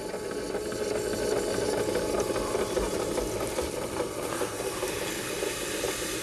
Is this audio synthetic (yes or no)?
no